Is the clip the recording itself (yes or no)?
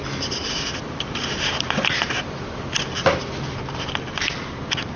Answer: yes